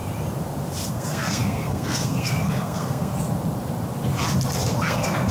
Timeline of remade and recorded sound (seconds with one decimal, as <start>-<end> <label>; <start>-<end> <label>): 0.0-0.9 recorded; 0.9-3.1 remade; 3.1-4.7 recorded; 4.7-5.3 remade